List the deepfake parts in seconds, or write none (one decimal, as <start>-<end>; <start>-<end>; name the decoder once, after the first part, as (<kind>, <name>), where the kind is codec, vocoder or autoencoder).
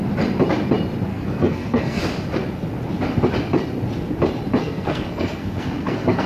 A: 1.1-2.0 (codec, SNAC); 4.6-6.3